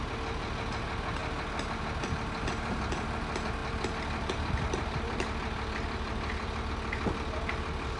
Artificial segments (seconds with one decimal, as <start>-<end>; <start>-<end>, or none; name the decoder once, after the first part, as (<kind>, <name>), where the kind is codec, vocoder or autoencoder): 3.6-6.7 (vocoder, BigVGAN v2)